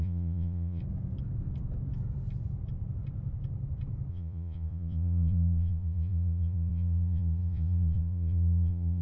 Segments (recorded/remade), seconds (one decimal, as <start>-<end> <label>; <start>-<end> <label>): 0.0-0.8 remade; 0.8-4.1 recorded; 4.1-9.0 remade